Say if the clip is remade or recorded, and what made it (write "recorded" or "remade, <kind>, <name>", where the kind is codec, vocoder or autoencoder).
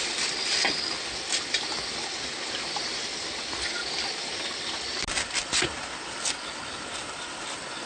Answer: recorded